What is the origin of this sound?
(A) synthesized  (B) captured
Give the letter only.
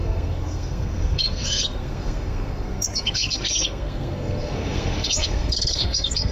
A